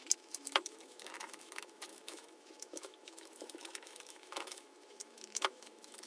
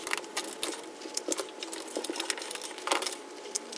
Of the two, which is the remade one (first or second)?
first